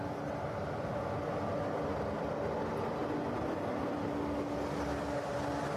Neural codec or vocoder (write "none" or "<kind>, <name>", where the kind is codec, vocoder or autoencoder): none